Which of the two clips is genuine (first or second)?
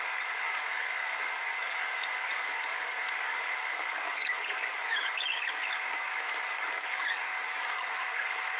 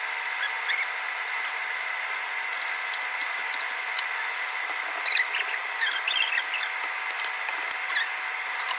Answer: second